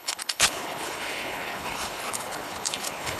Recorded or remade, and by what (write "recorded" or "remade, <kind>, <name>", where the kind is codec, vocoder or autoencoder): remade, codec, HILCodec